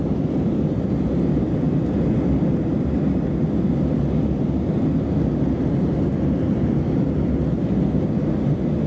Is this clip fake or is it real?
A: real